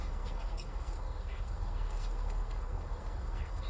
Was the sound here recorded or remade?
remade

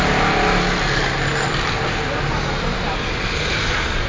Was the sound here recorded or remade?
recorded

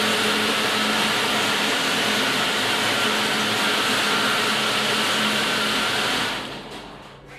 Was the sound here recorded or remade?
recorded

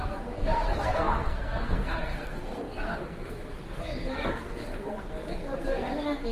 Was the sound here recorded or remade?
remade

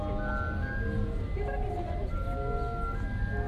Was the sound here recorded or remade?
recorded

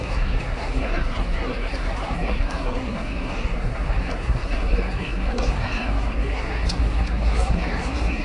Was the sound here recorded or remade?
remade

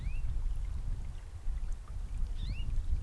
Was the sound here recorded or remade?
recorded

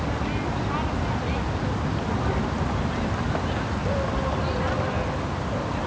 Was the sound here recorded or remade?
recorded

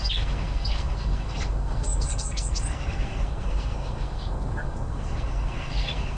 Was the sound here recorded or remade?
remade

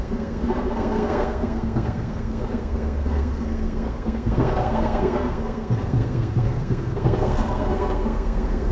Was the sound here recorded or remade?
remade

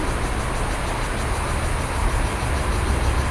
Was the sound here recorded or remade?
recorded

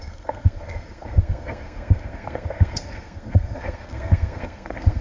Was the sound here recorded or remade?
remade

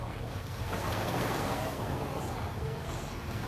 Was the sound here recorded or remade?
remade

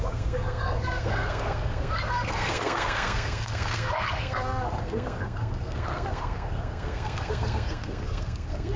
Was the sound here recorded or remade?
remade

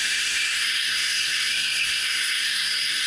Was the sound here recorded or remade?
remade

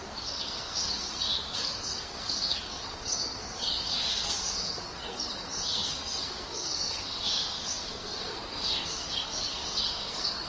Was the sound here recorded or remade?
remade